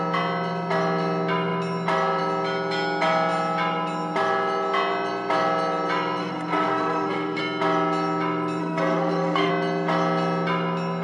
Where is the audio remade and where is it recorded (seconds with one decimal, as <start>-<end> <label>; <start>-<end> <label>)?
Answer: 0.0-6.2 recorded; 6.2-7.4 remade; 7.4-8.6 recorded; 8.6-9.5 remade; 9.5-11.0 recorded